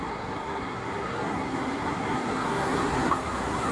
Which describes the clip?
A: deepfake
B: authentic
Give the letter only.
A